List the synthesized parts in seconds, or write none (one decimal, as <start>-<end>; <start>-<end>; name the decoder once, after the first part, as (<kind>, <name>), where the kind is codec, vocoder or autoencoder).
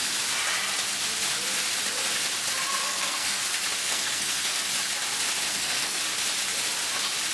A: 2.8-3.4 (codec, SNAC); 3.8-4.7; 5.5-6.0